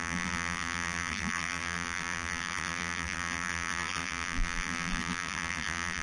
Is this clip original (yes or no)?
no